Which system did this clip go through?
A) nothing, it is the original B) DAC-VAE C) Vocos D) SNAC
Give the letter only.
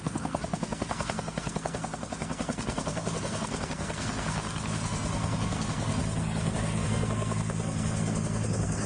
D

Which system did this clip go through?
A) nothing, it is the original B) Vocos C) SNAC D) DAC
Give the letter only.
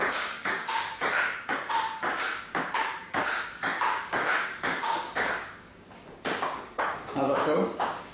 D